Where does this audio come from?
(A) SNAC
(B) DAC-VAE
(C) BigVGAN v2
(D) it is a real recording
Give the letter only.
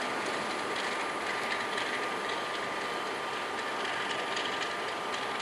D